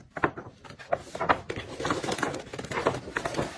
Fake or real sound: real